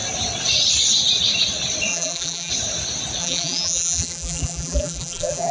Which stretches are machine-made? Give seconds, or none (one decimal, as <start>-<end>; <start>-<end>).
1.9-2.5; 3.2-5.5